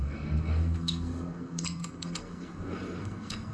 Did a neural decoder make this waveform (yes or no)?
yes